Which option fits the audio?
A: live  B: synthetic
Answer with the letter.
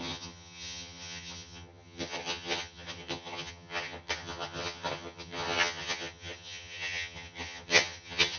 B